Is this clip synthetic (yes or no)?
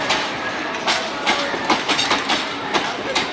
yes